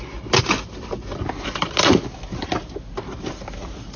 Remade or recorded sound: recorded